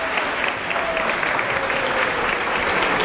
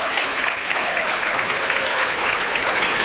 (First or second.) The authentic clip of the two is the first